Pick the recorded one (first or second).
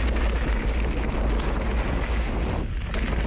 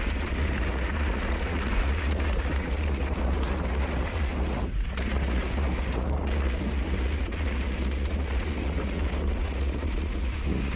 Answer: first